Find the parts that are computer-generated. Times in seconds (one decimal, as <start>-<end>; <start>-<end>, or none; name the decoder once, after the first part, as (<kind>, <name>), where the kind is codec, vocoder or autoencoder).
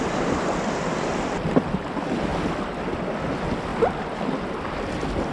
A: none